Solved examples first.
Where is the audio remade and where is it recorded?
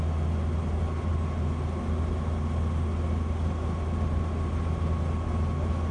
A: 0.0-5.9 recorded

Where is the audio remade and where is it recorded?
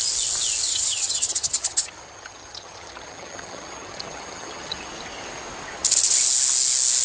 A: 0.0-0.7 recorded; 0.7-4.9 remade; 4.9-7.0 recorded